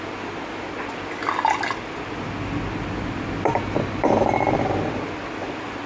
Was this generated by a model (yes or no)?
no